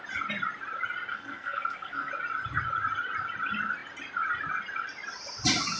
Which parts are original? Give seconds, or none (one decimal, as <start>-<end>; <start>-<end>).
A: 0.0-1.1; 2.1-5.8